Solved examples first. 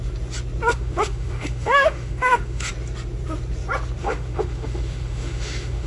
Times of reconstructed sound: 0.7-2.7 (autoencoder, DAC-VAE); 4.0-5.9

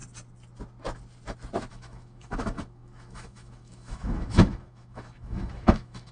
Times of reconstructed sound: 1.7-6.1 (autoencoder, DAC-VAE)

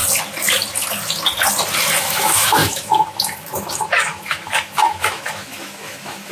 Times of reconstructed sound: 2.0-6.3 (autoencoder, DAC-VAE)

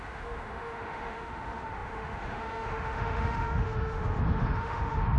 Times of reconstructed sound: 0.0-5.2 (autoencoder, DAC-VAE)